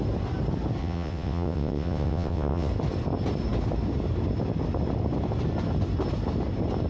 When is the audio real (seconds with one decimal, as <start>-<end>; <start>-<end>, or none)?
0.0-0.8; 2.7-6.9